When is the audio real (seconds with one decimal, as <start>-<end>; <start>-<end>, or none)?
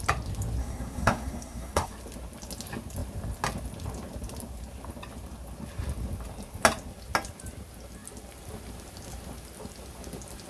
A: 0.0-0.6; 1.9-10.5